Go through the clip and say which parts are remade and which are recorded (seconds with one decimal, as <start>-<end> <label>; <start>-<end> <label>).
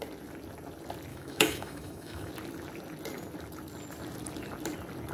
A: 0.0-1.1 recorded; 1.1-2.3 remade; 2.3-5.1 recorded